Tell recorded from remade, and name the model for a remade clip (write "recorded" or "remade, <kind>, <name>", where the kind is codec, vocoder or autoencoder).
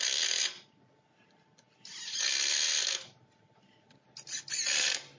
recorded